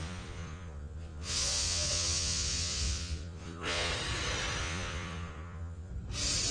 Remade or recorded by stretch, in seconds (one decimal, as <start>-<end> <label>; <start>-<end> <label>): 0.0-3.9 remade; 3.9-4.6 recorded; 4.6-5.9 remade; 5.9-6.5 recorded